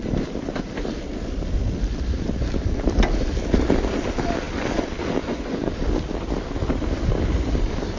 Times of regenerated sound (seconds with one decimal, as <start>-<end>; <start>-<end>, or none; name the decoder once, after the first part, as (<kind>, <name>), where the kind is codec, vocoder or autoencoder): 5.2-5.7 (vocoder, Vocos)

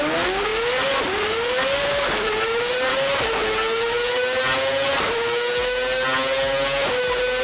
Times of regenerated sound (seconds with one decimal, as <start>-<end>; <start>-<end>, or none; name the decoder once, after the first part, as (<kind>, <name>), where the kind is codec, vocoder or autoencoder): none

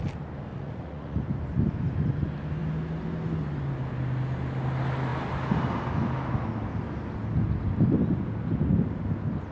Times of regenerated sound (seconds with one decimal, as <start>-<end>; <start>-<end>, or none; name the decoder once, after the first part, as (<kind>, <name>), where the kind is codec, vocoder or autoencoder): 0.5-1.2 (vocoder, Vocos)

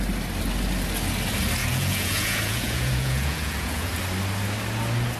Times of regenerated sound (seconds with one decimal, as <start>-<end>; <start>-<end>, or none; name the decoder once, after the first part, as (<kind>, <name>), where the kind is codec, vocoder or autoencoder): 1.6-4.0 (vocoder, Vocos)